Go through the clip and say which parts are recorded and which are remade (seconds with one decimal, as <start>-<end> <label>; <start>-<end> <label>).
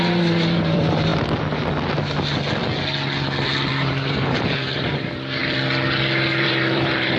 0.0-1.1 remade; 1.1-3.7 recorded; 3.7-5.4 remade; 5.4-6.3 recorded; 6.3-7.2 remade